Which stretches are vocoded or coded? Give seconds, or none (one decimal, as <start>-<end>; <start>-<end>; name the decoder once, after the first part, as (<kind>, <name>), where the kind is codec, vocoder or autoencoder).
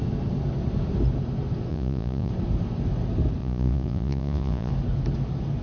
1.7-2.3 (vocoder, Vocos); 3.4-4.7